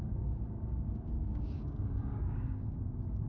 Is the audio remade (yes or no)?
yes